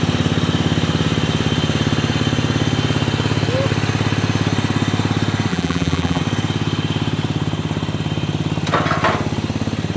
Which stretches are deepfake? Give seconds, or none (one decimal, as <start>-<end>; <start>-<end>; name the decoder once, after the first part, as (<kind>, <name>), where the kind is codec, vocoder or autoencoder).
5.5-6.2 (vocoder, BigVGAN v2)